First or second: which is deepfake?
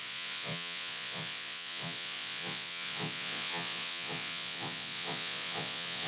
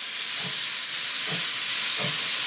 first